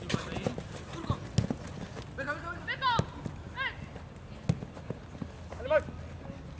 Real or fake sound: real